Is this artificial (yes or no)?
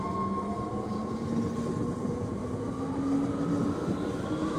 no